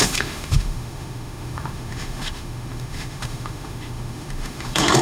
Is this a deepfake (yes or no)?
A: yes